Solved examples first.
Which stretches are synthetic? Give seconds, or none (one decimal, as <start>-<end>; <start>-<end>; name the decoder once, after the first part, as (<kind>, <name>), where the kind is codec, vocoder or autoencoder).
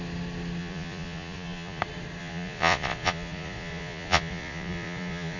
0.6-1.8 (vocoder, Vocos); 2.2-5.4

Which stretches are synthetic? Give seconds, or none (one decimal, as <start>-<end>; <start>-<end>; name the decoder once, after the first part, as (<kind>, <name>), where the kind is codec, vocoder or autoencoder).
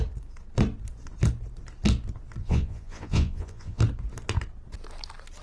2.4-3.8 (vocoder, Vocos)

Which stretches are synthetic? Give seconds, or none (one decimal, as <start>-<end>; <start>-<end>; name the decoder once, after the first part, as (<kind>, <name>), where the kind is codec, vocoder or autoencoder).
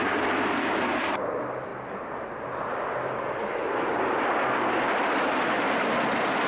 0.6-1.2 (codec, DAC)